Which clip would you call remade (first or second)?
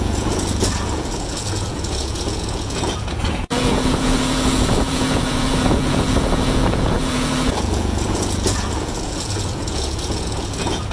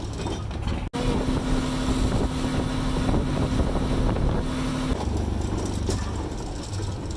first